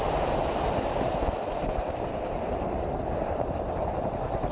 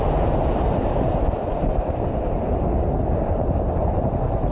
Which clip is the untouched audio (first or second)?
second